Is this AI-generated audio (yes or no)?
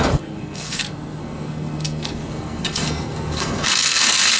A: yes